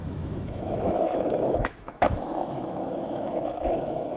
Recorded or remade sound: remade